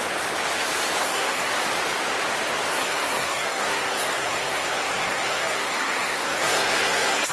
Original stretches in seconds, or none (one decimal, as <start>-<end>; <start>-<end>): 0.0-1.0; 1.5-2.7